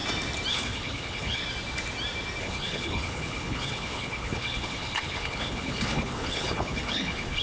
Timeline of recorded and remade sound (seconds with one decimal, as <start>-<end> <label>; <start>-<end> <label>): 0.0-0.5 recorded; 0.5-1.4 remade; 1.4-2.4 recorded; 2.4-7.4 remade